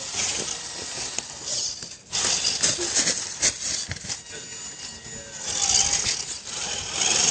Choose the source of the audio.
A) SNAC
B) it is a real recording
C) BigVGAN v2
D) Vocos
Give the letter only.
B